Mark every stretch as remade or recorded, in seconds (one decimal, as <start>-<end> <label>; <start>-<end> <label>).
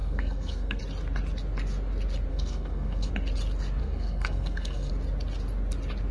0.0-0.8 remade; 0.8-2.3 recorded; 2.3-3.1 remade; 3.1-3.8 recorded; 3.8-4.9 remade; 4.9-6.1 recorded